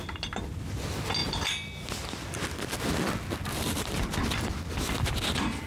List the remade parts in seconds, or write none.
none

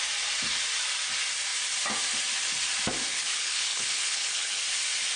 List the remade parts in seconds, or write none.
3.1-4.6

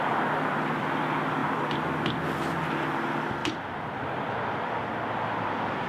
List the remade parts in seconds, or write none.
none

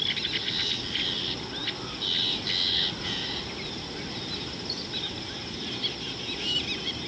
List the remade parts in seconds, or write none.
none

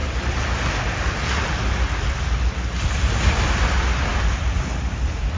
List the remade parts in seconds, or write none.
none

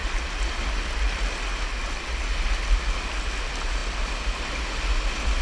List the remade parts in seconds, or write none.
none

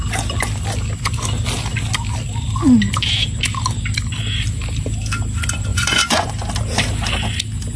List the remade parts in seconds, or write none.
5.7-6.3